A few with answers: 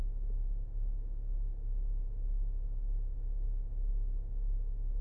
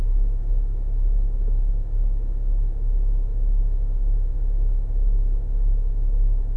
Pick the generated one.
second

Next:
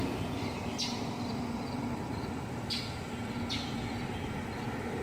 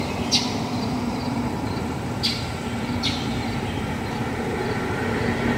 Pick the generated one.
second